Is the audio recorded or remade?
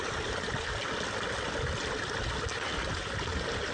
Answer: recorded